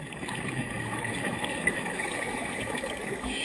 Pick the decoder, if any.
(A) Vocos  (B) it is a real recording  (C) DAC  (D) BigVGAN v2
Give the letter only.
C